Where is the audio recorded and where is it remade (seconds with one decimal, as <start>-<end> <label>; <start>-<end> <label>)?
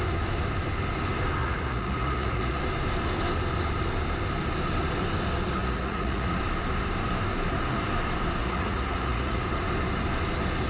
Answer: 0.0-1.4 recorded; 1.4-2.6 remade; 2.6-5.6 recorded; 5.6-6.4 remade; 6.4-8.4 recorded; 8.4-9.4 remade; 9.4-10.7 recorded